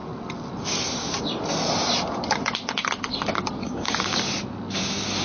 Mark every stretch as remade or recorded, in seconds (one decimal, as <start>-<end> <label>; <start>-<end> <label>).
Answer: 0.0-3.6 recorded; 3.6-4.2 remade; 4.2-5.2 recorded